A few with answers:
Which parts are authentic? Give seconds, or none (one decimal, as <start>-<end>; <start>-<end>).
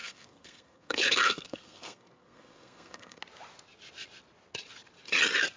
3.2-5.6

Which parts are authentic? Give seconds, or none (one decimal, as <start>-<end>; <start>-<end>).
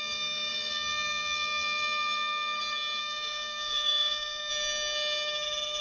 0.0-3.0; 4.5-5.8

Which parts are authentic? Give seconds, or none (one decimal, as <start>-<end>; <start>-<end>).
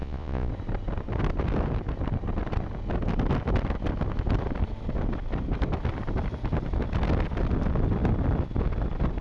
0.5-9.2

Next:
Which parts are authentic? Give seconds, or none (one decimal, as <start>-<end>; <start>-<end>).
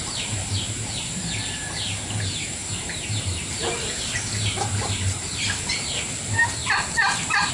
6.6-7.5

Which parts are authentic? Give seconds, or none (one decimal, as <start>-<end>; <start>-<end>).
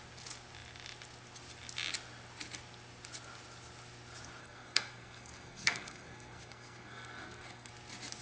0.0-4.4; 7.7-8.2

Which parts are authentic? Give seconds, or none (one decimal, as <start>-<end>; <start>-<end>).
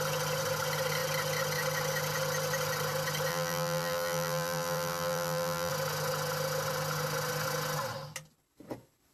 0.0-3.3; 5.7-9.1